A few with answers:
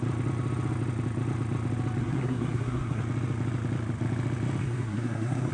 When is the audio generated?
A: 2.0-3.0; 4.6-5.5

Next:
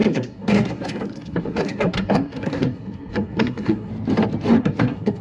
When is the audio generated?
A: 0.0-3.9; 4.6-5.2